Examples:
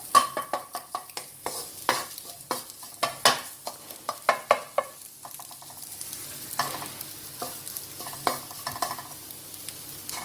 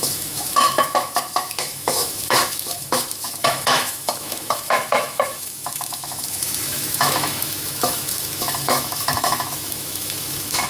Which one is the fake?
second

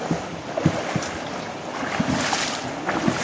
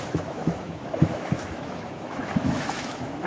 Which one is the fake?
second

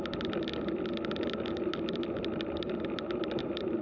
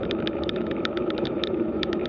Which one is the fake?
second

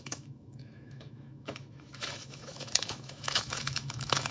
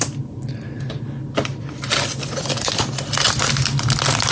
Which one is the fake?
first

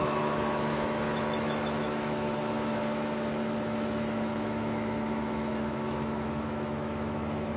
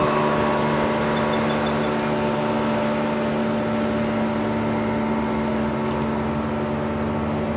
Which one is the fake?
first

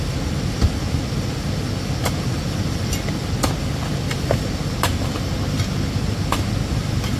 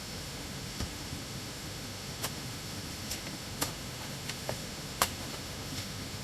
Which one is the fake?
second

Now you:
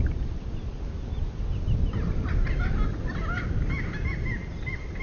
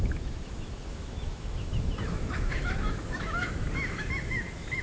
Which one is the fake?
second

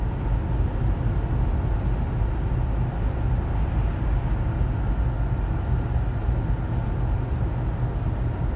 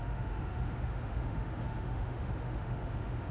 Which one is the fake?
second